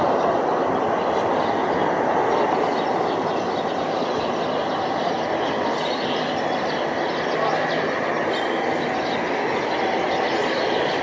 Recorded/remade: recorded